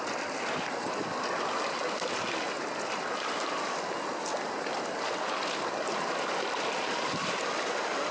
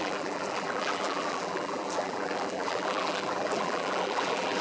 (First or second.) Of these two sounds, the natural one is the first